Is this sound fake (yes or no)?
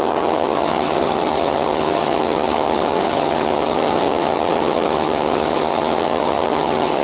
yes